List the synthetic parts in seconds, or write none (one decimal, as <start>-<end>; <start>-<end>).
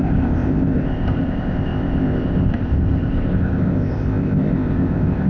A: 0.0-5.3